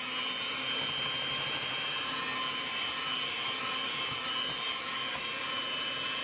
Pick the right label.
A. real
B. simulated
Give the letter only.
A